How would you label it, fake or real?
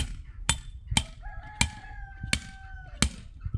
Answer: real